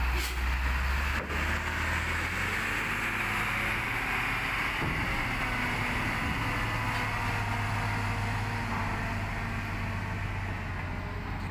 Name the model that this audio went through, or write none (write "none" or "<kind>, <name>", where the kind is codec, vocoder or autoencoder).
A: none